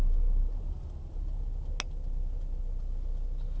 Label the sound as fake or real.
real